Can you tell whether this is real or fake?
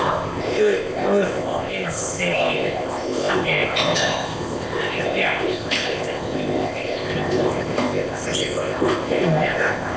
fake